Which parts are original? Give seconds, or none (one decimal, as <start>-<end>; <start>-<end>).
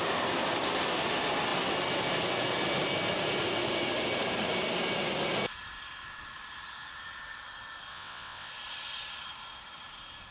0.0-7.9; 8.5-10.3